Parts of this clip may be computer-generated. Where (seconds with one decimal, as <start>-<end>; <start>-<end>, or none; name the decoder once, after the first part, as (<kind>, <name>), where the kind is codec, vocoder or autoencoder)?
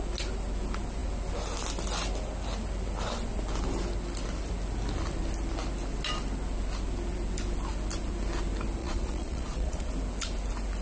8.8-9.9 (vocoder, Vocos)